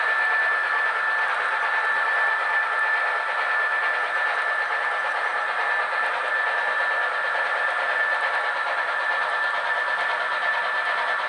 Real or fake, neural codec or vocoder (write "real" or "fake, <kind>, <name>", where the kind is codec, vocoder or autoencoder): real